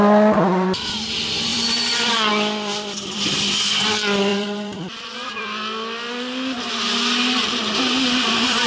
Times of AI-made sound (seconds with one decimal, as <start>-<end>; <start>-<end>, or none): 1.5-2.3; 4.3-5.4